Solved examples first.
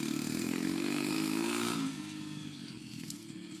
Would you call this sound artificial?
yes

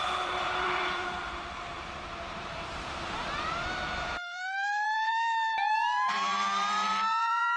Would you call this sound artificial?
yes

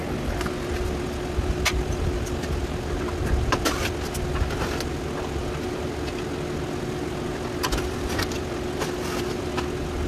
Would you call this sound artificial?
no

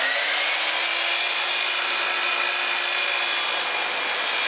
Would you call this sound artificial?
no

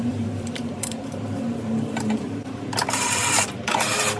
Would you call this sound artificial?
yes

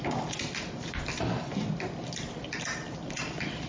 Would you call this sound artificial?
no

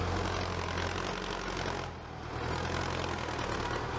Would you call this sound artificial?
no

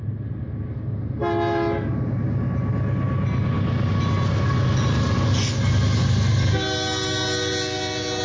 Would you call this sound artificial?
no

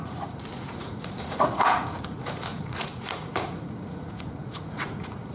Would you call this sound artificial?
yes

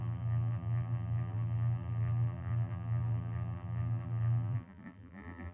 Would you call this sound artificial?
yes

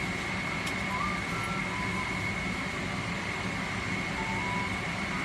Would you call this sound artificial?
no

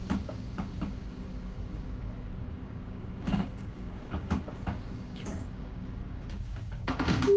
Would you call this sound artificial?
yes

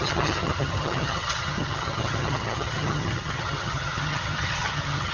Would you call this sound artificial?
yes